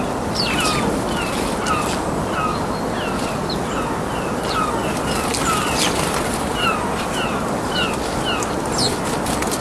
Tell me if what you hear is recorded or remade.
recorded